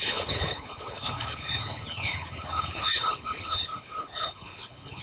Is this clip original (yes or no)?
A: no